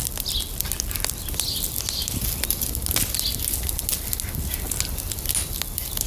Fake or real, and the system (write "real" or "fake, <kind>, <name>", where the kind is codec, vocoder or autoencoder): real